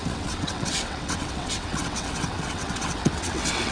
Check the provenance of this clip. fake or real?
fake